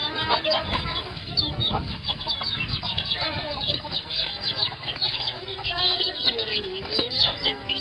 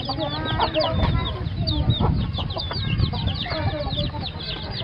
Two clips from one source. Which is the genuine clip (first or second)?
second